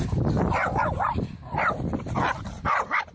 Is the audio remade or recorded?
recorded